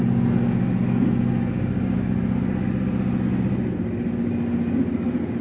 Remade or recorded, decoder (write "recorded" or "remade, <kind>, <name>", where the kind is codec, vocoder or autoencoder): recorded